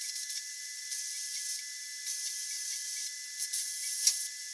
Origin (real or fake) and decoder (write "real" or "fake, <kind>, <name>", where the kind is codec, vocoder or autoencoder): real